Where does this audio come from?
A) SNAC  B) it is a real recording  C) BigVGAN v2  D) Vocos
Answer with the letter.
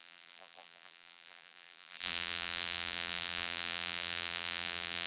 C